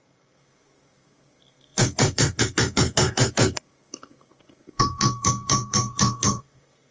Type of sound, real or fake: fake